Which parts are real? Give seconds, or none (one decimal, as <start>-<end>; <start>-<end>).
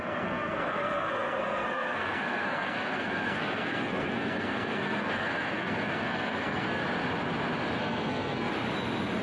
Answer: 6.8-7.8; 8.5-9.2